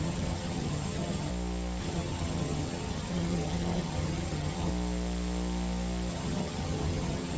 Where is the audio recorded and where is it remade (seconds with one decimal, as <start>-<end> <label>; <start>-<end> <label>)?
0.0-1.3 remade; 1.3-1.8 recorded; 1.8-4.7 remade; 4.7-6.1 recorded; 6.1-7.4 remade